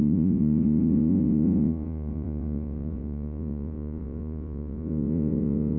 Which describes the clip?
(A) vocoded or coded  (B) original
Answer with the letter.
A